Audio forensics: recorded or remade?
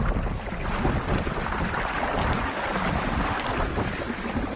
recorded